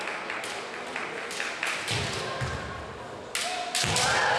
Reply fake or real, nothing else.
real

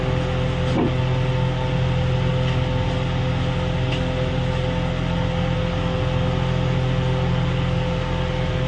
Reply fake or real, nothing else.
real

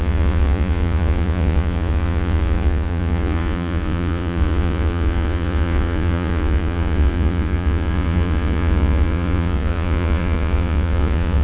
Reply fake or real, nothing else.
fake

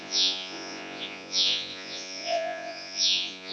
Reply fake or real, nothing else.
fake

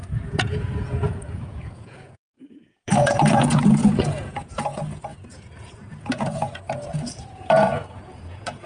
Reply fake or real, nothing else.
fake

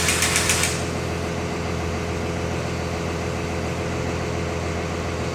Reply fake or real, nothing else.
real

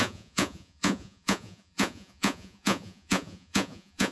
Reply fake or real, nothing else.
fake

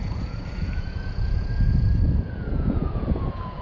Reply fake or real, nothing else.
fake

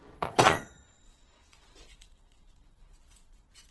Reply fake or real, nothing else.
fake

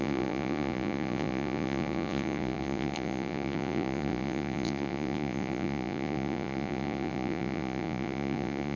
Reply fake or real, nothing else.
fake